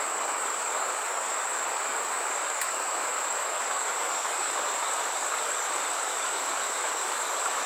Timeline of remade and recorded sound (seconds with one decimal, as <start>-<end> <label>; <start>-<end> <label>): 0.0-7.7 remade